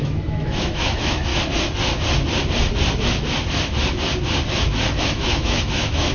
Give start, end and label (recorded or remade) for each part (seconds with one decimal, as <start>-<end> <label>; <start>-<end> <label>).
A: 0.0-1.3 remade; 1.3-5.0 recorded; 5.0-6.1 remade